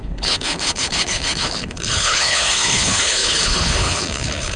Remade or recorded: remade